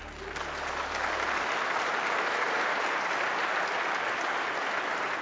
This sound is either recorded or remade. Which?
recorded